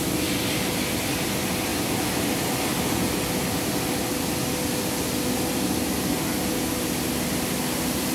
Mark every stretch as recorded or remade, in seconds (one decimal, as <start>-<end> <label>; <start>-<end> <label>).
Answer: 0.0-8.1 recorded